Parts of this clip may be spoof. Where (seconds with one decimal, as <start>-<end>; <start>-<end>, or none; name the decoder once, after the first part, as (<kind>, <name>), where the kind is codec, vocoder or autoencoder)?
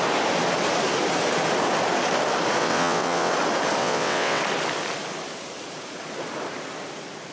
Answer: 2.6-3.3 (vocoder, WaveNeXt); 3.8-4.4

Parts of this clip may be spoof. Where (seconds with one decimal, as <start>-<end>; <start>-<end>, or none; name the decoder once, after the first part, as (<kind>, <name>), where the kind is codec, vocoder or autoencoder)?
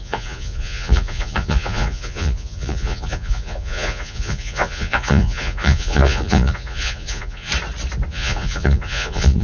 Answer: 0.0-7.5 (vocoder, Vocos); 8.1-9.4